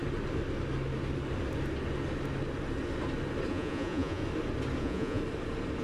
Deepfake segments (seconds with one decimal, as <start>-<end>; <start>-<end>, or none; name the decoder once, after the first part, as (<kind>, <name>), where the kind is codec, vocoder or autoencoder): 3.5-4.2 (vocoder, Vocos); 4.8-5.2